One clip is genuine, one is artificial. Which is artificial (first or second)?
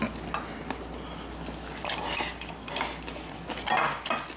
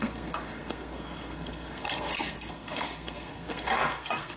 second